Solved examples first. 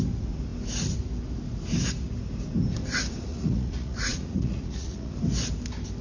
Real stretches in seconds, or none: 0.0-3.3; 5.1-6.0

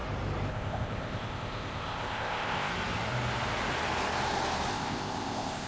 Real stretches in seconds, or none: 0.0-0.5; 2.7-4.7